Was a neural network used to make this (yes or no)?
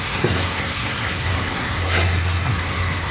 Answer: yes